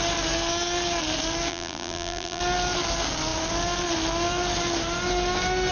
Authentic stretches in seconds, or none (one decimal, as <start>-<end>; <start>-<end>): 0.0-1.5; 2.4-5.7